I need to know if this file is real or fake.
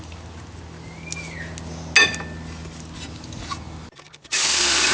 real